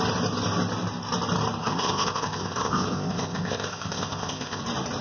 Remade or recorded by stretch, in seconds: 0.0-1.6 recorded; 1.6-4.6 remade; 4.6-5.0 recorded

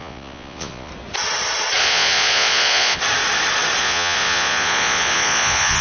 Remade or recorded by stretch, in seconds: 0.0-0.9 remade; 0.9-1.8 recorded; 1.8-3.0 remade; 3.0-3.8 recorded; 3.8-5.8 remade

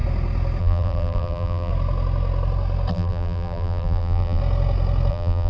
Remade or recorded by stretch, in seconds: 0.0-0.6 recorded; 0.6-1.7 remade; 1.7-2.9 recorded; 2.9-4.4 remade; 4.4-5.1 recorded; 5.1-5.5 remade

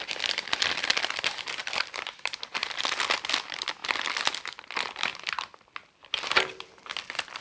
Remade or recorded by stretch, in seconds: 0.0-1.6 recorded; 1.6-2.4 remade; 2.4-7.4 recorded

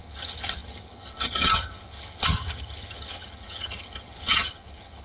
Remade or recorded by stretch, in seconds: 0.0-5.0 remade